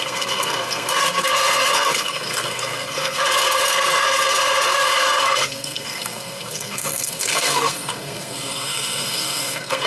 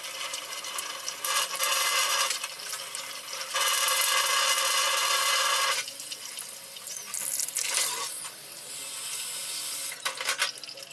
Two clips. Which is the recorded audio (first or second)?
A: second